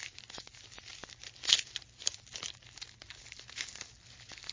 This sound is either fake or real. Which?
real